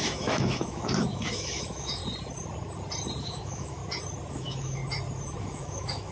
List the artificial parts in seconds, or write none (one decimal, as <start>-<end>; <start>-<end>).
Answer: 0.0-2.0; 3.2-3.8; 4.3-4.8; 5.4-6.1